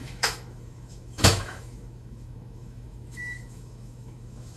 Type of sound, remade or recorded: remade